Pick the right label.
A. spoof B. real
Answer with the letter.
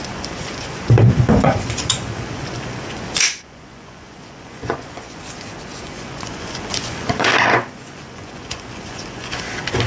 A